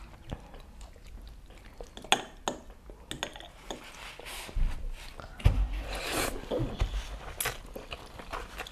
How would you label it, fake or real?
real